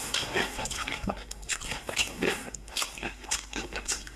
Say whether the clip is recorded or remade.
remade